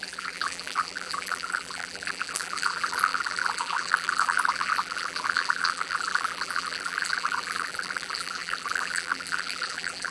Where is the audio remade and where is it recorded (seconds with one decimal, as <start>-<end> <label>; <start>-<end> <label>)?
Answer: 0.0-10.1 remade